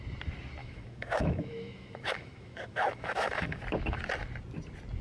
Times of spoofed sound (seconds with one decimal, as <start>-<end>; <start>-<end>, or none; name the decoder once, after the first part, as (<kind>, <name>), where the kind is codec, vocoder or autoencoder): 0.6-3.6 (autoencoder, DAC-VAE)